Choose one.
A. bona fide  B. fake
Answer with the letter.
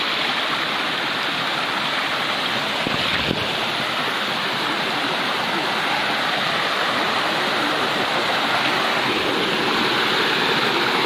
A